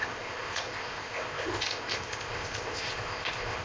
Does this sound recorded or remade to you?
remade